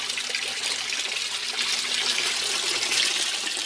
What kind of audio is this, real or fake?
real